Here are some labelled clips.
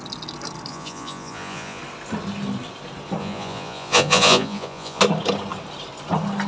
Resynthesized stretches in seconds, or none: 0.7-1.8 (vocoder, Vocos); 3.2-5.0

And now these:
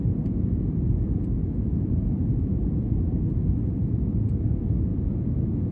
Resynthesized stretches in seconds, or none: 0.0-5.7 (vocoder, Vocos)